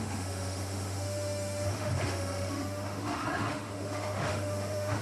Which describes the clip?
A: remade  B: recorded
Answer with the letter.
A